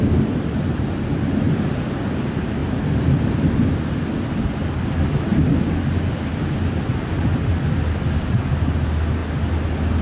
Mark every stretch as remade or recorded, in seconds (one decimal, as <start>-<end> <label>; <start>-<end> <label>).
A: 0.0-10.0 recorded